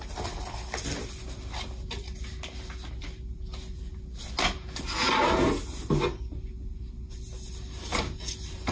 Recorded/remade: recorded